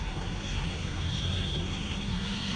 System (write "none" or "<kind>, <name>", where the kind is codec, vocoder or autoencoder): codec, SNAC